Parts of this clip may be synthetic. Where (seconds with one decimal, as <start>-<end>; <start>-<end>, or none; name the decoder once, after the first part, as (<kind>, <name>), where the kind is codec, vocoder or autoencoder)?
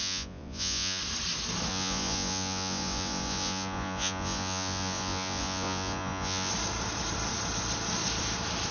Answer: 0.0-1.0 (vocoder, Vocos); 1.7-6.5